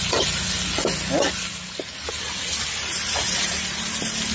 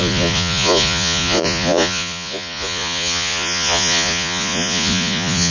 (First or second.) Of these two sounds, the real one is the first